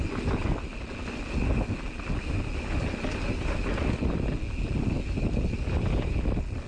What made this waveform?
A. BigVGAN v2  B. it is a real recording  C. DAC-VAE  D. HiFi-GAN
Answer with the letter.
B